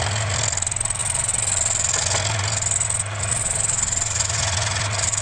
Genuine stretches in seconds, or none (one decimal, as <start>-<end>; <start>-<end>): 0.0-5.2